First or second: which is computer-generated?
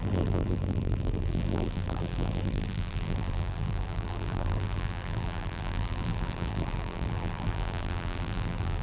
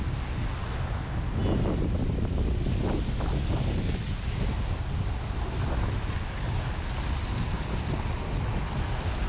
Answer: first